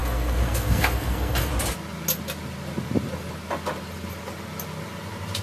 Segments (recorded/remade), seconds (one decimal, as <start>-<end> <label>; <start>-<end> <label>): 0.0-1.5 remade; 1.5-5.4 recorded

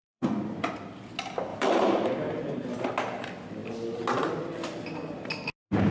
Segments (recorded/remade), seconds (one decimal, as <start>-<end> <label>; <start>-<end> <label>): 0.0-0.7 remade; 0.7-1.5 recorded; 1.5-2.8 remade; 2.8-5.9 recorded

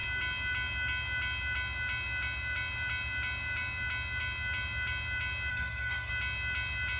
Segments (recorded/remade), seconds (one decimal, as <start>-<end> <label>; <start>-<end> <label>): 0.0-5.5 recorded; 5.5-6.1 remade; 6.1-7.0 recorded

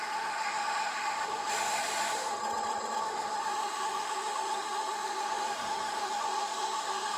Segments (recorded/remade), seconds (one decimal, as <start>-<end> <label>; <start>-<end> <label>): 0.0-2.4 remade; 2.4-3.0 recorded; 3.0-7.2 remade

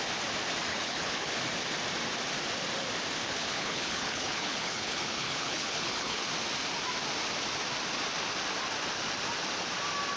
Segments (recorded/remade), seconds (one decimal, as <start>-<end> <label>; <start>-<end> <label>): 0.0-0.7 recorded; 0.7-1.3 remade; 1.3-3.2 recorded; 3.2-6.2 remade; 6.2-10.2 recorded

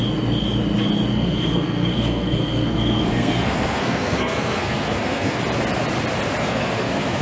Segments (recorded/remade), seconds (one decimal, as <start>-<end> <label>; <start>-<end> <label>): 0.0-1.1 recorded; 1.1-5.4 remade; 5.4-6.4 recorded; 6.4-7.2 remade